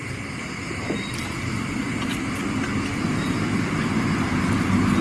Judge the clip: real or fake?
real